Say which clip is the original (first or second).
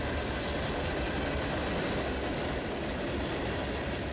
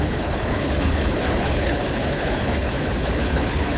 first